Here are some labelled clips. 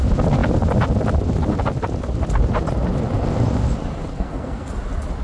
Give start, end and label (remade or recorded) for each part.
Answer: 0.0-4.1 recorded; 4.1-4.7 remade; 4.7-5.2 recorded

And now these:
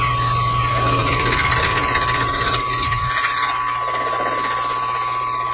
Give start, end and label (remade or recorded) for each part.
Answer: 0.0-5.5 recorded

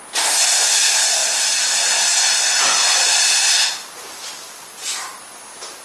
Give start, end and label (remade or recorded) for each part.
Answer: 0.0-5.8 recorded

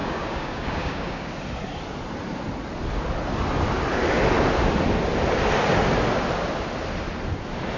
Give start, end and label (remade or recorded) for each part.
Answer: 0.0-1.3 remade; 1.3-7.8 recorded

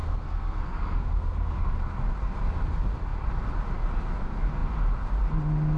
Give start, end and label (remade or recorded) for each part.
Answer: 0.0-1.7 remade; 1.7-5.8 recorded